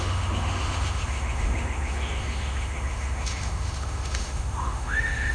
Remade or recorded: remade